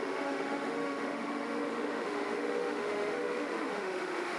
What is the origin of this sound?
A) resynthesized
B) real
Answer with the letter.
A